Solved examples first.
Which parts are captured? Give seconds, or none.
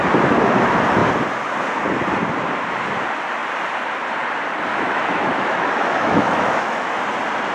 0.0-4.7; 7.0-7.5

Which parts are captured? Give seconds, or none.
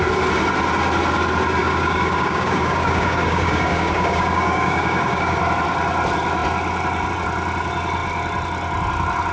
0.0-1.6; 5.4-9.3